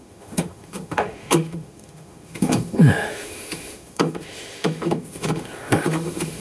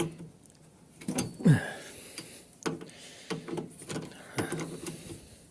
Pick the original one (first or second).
second